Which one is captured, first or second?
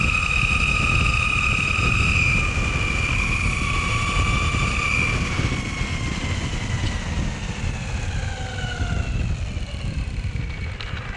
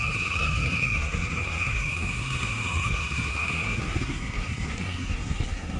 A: first